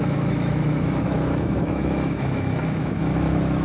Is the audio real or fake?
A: fake